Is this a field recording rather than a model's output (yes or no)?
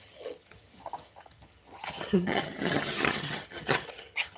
no